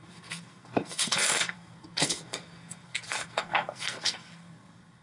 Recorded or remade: remade